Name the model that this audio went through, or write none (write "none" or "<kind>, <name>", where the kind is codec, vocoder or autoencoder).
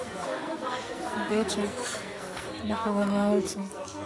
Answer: codec, SNAC